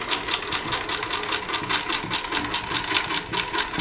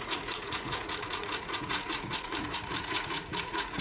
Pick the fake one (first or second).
second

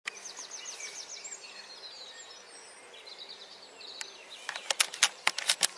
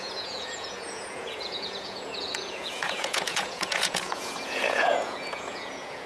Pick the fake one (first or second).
second